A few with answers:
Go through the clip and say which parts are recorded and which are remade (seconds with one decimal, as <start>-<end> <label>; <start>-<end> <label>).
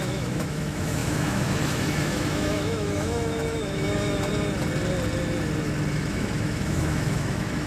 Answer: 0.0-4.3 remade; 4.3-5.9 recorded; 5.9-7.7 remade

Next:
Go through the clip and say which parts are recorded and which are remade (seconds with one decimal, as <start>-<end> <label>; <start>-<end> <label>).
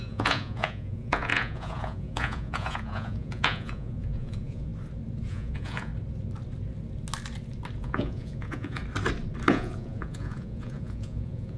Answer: 0.0-4.7 remade; 4.7-5.3 recorded; 5.3-5.9 remade; 5.9-7.8 recorded; 7.8-8.8 remade; 8.8-9.5 recorded; 9.5-11.6 remade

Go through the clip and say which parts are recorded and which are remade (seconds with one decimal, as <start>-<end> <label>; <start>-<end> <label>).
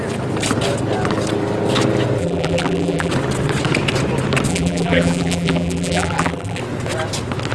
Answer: 0.0-2.2 recorded; 2.2-3.1 remade; 3.1-4.5 recorded; 4.5-6.6 remade; 6.6-7.5 recorded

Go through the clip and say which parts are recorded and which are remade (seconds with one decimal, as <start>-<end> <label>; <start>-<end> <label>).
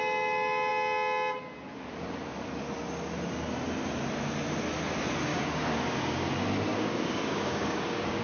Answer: 0.0-5.3 recorded; 5.3-6.3 remade; 6.3-6.7 recorded; 6.7-8.2 remade